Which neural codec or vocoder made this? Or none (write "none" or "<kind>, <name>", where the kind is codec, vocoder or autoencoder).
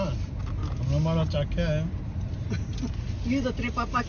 none